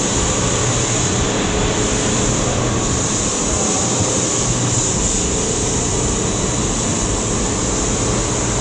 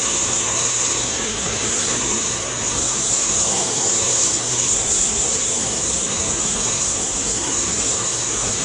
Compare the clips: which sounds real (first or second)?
first